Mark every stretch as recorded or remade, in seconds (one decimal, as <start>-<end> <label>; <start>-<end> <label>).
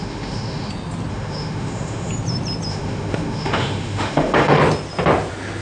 0.0-0.7 remade; 0.7-1.1 recorded; 1.1-2.1 remade; 2.1-2.7 recorded; 2.7-4.6 remade; 4.6-5.6 recorded